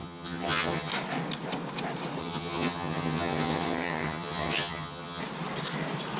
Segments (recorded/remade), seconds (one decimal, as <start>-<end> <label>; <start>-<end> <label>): 0.0-0.9 remade; 0.9-2.2 recorded; 2.2-5.2 remade; 5.2-6.2 recorded